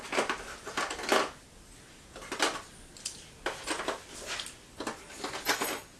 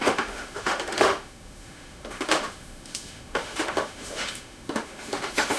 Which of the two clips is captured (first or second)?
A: first